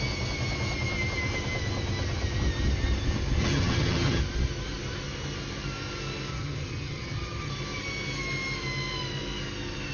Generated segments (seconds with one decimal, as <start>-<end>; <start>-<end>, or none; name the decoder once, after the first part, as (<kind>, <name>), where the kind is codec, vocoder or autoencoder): 3.4-4.2 (vocoder, HiFi-GAN); 6.3-7.5